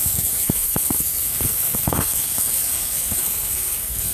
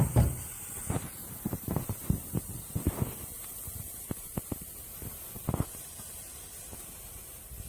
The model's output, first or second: first